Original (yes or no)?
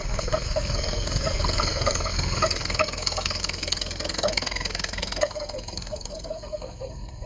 no